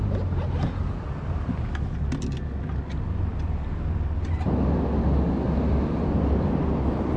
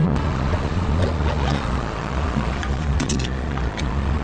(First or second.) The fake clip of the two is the second